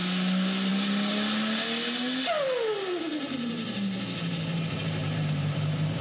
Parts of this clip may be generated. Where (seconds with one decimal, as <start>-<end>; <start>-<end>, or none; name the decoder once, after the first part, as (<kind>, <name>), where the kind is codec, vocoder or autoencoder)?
5.0-6.0 (vocoder, BigVGAN v2)